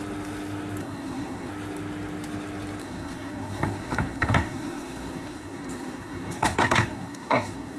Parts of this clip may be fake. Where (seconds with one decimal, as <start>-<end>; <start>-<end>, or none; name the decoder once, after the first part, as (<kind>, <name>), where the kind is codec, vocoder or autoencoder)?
0.8-1.5 (codec, SNAC); 2.8-7.8